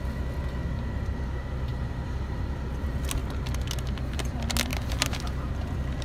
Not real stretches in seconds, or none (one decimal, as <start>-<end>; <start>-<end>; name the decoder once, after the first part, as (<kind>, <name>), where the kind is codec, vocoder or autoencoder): 1.7-2.4 (vocoder, BigVGAN v2); 4.7-5.5